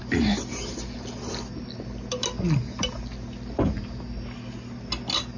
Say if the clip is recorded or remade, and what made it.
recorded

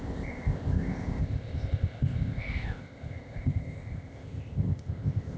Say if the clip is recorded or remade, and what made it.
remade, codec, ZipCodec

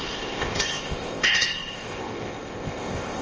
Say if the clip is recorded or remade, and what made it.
remade, codec, ZipCodec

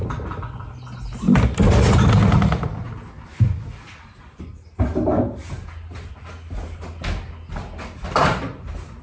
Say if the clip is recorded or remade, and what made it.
recorded